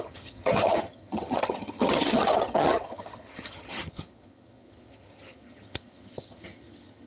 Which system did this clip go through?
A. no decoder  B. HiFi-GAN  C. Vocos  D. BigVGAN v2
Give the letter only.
B